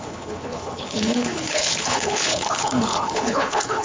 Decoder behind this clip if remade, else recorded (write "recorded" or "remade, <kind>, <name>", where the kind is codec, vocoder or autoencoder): remade, codec, HILCodec